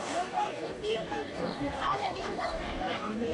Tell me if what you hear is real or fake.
fake